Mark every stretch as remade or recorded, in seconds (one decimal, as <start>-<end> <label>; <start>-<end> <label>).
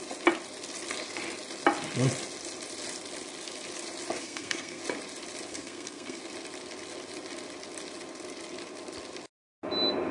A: 0.0-4.2 recorded; 4.2-4.8 remade; 4.8-5.5 recorded; 5.5-6.2 remade; 6.2-10.1 recorded